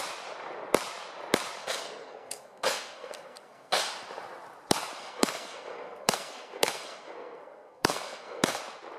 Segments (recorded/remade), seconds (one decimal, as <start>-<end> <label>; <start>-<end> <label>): 0.0-1.6 recorded; 1.6-3.8 remade; 3.8-5.0 recorded; 5.0-8.6 remade; 8.6-9.0 recorded